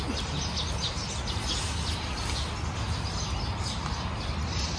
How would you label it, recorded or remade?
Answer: recorded